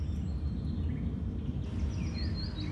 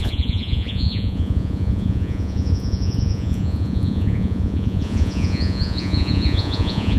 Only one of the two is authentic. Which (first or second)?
first